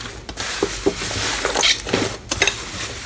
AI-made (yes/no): no